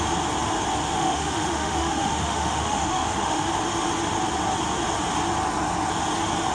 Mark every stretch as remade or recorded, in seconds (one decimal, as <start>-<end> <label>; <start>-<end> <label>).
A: 0.0-0.8 recorded; 0.8-3.5 remade; 3.5-6.5 recorded